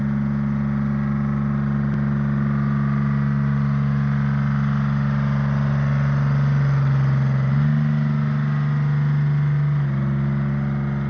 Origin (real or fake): real